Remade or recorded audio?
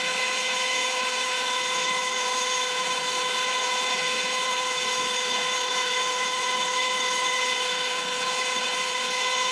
remade